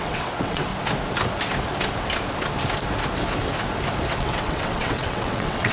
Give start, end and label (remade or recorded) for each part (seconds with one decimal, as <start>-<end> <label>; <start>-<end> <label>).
0.0-0.7 remade; 0.7-4.1 recorded; 4.1-5.7 remade